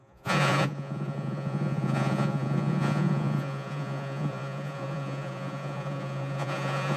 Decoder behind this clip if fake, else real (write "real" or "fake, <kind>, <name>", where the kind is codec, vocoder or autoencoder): fake, vocoder, Vocos